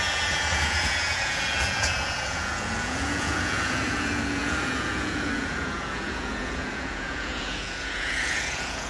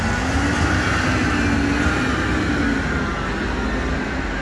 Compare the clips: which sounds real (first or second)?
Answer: second